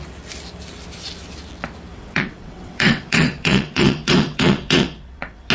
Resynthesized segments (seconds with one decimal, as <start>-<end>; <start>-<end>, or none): 1.9-5.5